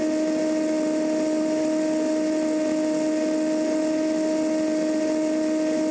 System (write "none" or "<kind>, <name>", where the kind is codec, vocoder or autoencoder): none